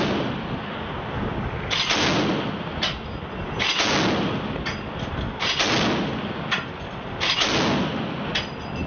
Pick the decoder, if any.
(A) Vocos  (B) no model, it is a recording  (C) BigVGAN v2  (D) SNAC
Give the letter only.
B